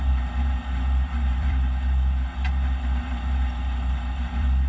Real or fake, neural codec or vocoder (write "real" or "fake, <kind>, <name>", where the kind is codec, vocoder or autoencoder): fake, vocoder, BigVGAN v2